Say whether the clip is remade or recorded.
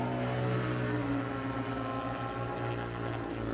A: recorded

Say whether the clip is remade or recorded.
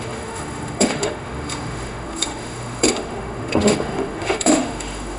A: remade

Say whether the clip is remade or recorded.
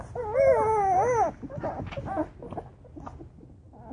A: recorded